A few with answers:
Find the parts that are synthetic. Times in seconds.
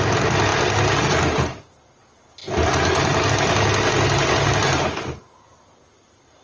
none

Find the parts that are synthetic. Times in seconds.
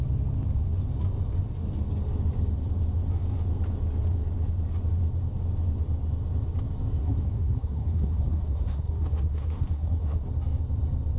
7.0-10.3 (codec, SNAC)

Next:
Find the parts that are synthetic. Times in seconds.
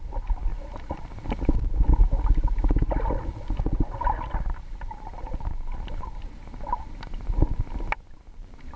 none